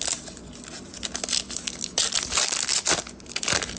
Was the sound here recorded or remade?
recorded